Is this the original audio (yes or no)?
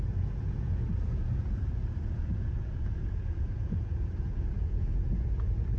no